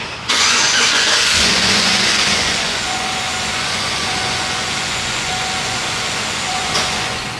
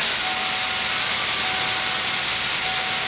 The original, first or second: second